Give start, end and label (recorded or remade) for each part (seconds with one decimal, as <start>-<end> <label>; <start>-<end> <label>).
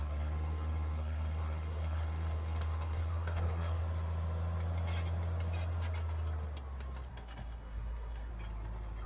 0.0-3.8 remade; 3.8-7.1 recorded; 7.1-8.3 remade; 8.3-9.1 recorded